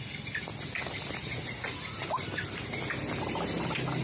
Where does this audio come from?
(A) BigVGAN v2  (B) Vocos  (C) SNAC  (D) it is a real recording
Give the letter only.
D